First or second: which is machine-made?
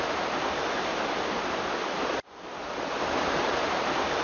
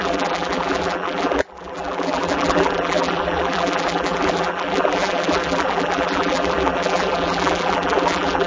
second